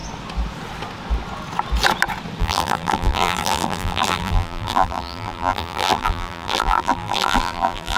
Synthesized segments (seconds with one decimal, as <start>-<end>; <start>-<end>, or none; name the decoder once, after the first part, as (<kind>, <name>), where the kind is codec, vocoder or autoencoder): 2.4-8.0 (vocoder, BigVGAN v2)